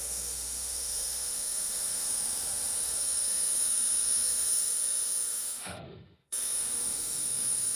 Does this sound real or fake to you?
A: fake